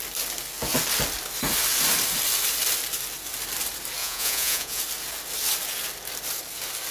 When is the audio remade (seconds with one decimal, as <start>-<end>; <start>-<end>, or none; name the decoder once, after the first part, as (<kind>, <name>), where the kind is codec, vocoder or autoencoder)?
4.0-4.8 (vocoder, Vocos)